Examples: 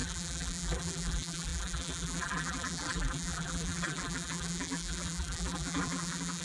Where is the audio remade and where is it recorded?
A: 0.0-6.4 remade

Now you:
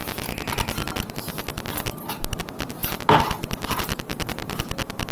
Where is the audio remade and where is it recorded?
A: 0.0-5.1 recorded

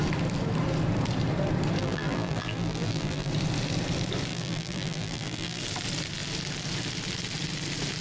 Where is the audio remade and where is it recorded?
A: 0.0-1.8 recorded; 1.8-3.3 remade; 3.3-4.3 recorded; 4.3-5.6 remade; 5.6-8.0 recorded

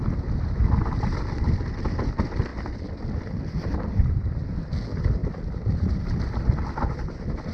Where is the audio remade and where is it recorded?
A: 0.0-7.5 recorded

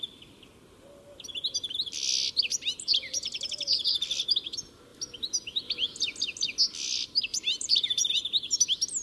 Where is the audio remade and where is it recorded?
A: 0.0-2.5 recorded; 2.5-4.0 remade; 4.0-7.3 recorded; 7.3-8.1 remade; 8.1-9.0 recorded

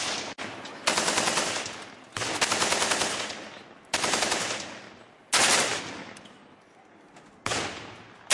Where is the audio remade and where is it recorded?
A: 0.0-8.3 recorded